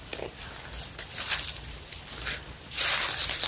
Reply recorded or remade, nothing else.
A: recorded